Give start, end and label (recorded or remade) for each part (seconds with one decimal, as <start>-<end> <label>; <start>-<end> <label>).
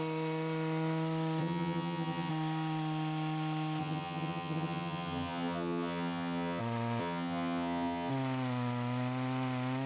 0.0-1.4 recorded; 1.4-2.3 remade; 2.3-3.8 recorded; 3.8-6.6 remade; 6.6-7.0 recorded; 7.0-8.1 remade; 8.1-9.9 recorded